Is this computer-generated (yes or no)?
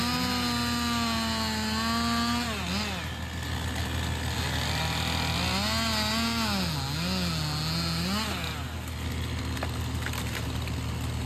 no